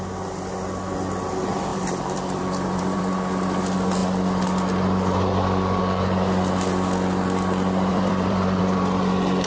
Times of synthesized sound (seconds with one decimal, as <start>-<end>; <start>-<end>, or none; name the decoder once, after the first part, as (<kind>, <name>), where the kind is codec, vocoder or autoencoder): 1.7-3.0 (vocoder, BigVGAN v2); 7.9-8.6